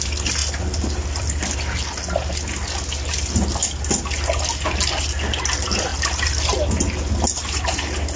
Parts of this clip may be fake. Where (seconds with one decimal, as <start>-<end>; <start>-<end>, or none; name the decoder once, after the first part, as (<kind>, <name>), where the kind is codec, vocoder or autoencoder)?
none